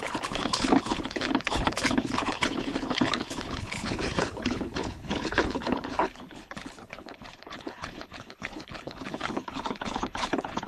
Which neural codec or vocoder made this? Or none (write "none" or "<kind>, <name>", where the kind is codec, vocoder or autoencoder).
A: codec, HILCodec